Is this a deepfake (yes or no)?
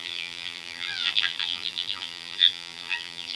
yes